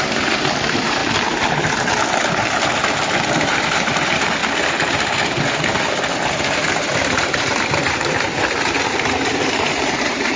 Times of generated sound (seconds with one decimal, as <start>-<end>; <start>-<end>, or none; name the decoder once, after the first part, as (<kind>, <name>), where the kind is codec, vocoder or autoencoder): 0.0-1.0 (vocoder, BigVGAN v2); 3.4-4.4; 6.6-10.4